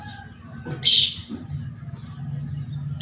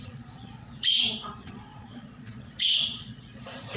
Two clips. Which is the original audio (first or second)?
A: first